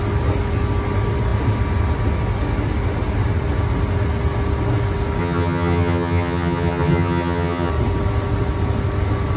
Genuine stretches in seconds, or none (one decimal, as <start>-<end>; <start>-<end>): 0.0-5.2; 7.7-9.4